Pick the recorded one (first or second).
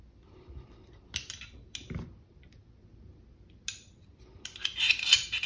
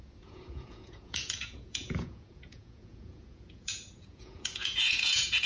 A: first